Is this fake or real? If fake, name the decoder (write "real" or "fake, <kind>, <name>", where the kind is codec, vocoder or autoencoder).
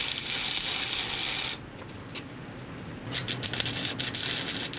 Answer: real